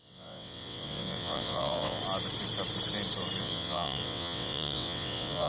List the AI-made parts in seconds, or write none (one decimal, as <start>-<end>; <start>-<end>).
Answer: 0.0-2.0; 3.4-5.5